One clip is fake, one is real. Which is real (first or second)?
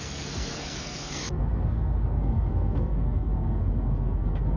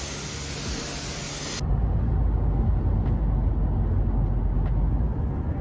second